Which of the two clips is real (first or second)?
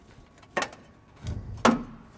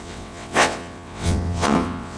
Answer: first